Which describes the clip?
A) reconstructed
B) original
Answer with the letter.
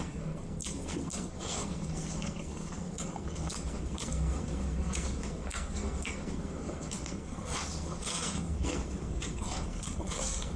A